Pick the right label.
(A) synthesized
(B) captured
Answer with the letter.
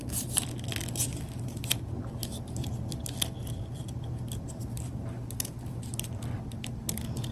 B